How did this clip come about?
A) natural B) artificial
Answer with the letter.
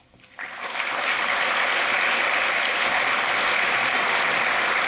A